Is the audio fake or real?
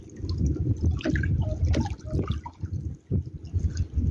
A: real